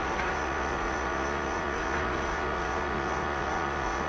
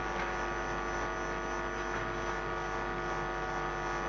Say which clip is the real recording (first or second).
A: second